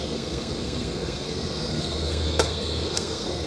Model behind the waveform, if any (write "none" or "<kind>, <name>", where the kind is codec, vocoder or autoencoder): codec, SNAC